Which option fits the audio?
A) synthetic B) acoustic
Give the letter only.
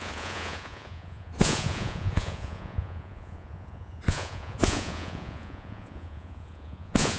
A